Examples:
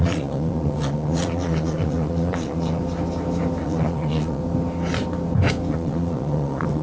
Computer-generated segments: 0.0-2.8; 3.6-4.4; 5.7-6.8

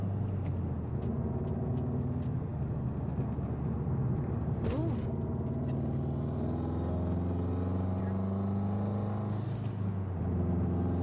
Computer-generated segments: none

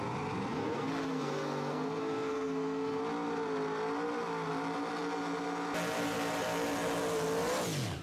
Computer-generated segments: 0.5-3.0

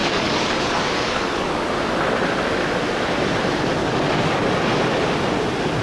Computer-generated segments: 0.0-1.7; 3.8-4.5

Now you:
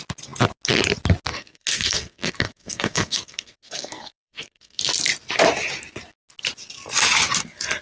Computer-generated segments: 1.3-4.8

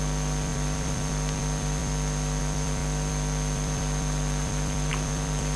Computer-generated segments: 0.0-5.6